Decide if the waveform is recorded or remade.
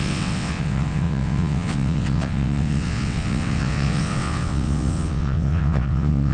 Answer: remade